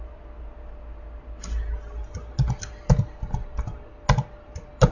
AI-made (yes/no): no